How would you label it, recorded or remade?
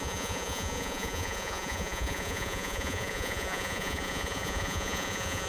remade